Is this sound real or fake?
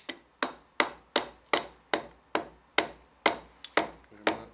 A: real